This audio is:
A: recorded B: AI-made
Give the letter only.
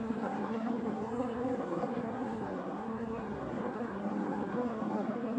B